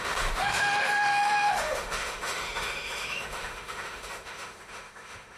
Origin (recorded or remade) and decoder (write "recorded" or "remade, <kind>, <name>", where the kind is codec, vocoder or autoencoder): remade, autoencoder, DAC-VAE